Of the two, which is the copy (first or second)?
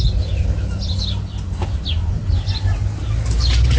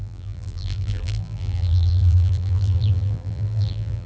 second